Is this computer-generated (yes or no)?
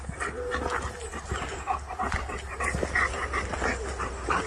no